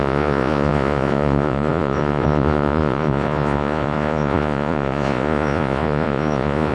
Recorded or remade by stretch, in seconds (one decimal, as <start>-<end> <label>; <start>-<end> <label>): 0.0-6.7 remade